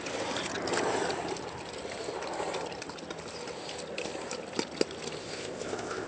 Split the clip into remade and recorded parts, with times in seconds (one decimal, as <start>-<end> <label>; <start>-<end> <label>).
0.0-5.2 recorded; 5.2-6.1 remade